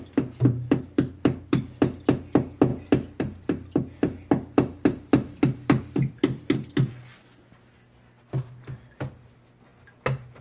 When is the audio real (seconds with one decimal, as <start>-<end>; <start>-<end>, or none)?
0.0-10.4